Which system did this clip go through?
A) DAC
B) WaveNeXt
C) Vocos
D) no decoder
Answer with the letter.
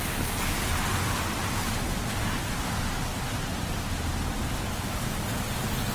D